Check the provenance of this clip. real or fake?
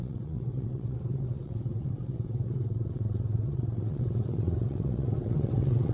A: fake